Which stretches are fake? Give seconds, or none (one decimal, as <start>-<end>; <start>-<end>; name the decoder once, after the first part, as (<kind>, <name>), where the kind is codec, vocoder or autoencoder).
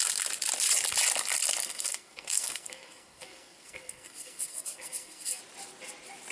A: 1.6-5.4 (codec, SNAC)